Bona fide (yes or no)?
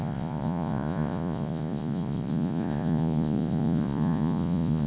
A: no